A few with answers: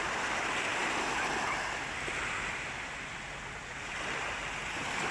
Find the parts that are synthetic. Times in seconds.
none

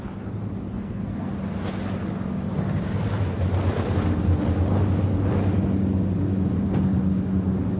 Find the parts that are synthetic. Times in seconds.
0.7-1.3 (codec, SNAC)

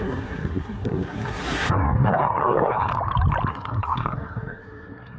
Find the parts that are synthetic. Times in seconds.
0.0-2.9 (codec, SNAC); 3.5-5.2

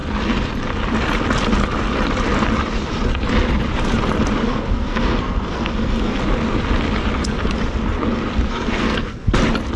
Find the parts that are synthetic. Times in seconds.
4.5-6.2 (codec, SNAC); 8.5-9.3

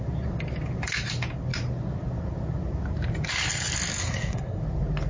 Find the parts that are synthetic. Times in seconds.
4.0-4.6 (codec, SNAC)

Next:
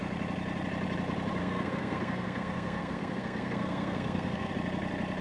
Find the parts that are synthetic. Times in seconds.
1.4-4.5 (codec, SNAC)

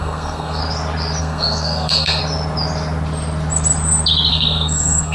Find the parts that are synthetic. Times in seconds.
0.0-0.6 (codec, SNAC); 1.2-2.2; 4.3-5.1